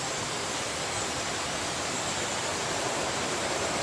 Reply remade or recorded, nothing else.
remade